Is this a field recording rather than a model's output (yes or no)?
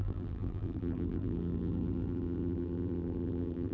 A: no